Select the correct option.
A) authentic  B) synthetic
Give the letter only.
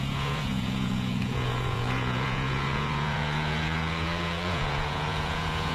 B